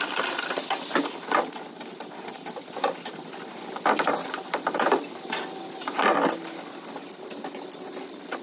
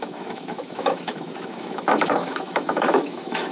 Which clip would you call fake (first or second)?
second